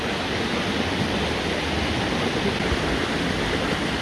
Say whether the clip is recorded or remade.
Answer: recorded